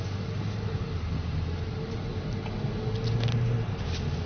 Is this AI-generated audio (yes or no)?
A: no